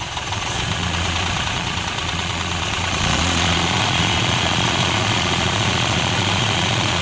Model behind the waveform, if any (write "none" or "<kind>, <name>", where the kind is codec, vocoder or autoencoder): vocoder, Vocos